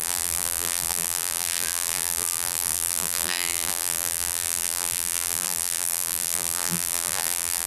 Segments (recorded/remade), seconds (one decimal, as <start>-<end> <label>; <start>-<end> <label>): 0.0-7.7 remade